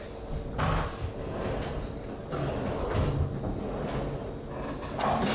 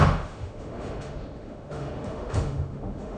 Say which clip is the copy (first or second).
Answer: second